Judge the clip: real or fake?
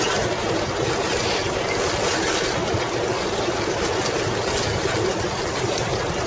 real